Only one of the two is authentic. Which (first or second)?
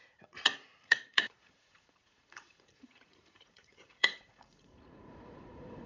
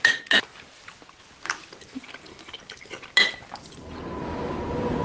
second